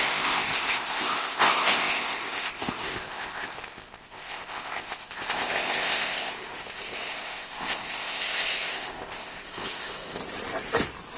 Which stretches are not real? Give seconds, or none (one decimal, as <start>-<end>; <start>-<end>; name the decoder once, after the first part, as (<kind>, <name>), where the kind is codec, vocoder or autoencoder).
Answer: 0.0-10.2 (codec, ZipCodec)